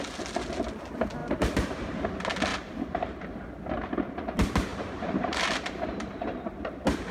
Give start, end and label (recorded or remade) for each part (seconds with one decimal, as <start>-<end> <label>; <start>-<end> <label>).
0.0-1.2 recorded; 1.2-2.0 remade; 2.0-2.5 recorded; 2.5-3.5 remade; 3.5-4.7 recorded; 4.7-6.4 remade; 6.4-7.1 recorded